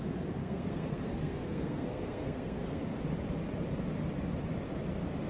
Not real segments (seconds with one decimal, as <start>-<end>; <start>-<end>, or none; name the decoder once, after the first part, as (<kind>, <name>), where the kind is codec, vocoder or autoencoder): 0.4-2.8 (codec, SNAC)